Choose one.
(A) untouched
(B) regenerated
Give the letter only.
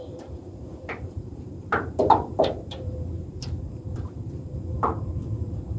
B